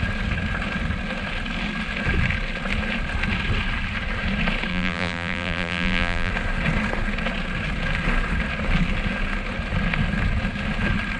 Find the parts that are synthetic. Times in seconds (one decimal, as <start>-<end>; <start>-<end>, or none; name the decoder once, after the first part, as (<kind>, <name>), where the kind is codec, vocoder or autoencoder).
4.7-6.3 (vocoder, BigVGAN v2)